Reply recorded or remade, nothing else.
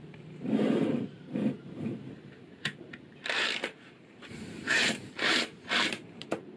remade